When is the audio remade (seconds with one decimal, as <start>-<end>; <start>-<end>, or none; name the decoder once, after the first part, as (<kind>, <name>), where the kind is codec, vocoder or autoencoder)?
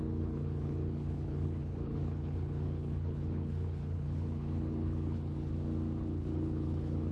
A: 0.0-5.5 (codec, HILCodec); 6.0-7.1